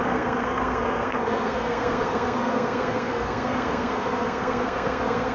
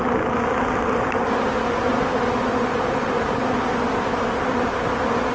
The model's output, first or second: first